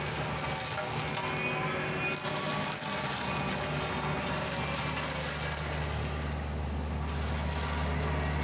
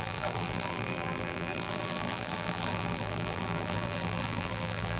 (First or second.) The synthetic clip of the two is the second